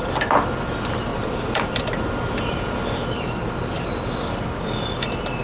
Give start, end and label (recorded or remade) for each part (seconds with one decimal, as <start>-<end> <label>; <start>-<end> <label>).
0.0-1.1 recorded; 1.1-4.3 remade; 4.3-5.4 recorded